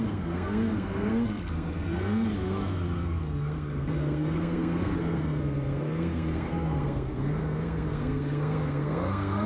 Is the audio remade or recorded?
remade